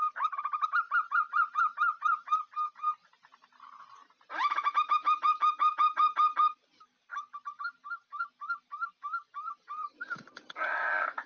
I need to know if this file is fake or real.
fake